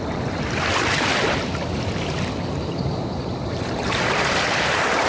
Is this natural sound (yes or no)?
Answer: no